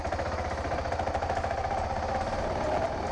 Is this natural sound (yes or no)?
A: yes